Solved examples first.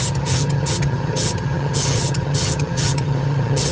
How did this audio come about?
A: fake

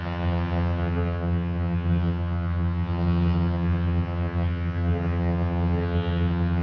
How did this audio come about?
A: fake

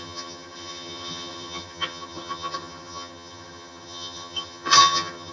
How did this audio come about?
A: fake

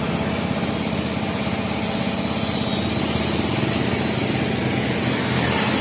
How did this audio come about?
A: real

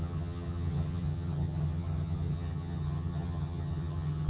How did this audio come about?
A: fake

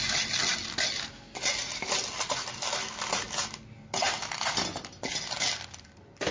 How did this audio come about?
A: real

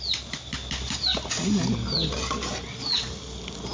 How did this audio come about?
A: real